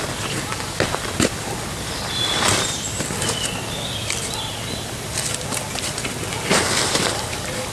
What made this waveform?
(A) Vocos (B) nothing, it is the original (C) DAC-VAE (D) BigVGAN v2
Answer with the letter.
D